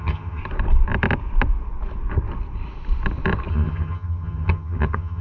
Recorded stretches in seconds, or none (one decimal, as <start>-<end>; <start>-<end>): 0.4-3.5